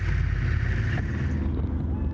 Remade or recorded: recorded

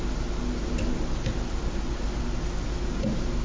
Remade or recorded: recorded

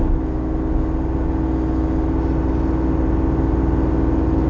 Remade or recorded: recorded